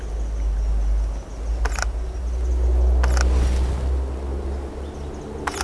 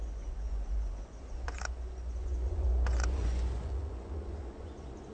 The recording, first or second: first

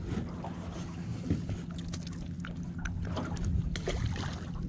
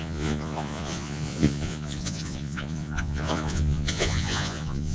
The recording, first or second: first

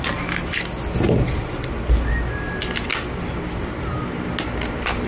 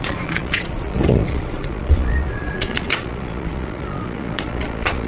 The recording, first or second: first